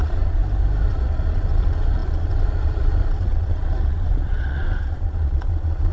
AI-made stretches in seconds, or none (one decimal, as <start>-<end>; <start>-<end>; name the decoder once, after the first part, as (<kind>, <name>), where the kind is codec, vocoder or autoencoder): 0.0-0.4 (vocoder, Vocos); 0.9-5.9